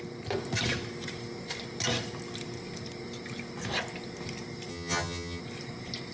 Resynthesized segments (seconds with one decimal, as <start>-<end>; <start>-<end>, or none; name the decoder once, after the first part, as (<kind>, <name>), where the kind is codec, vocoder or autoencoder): 4.7-5.4 (vocoder, HiFi-GAN)